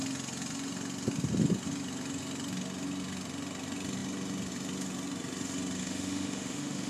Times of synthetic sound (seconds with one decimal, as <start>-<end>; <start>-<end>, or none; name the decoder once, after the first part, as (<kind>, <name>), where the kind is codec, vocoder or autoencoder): 5.8-6.9 (autoencoder, DAC-VAE)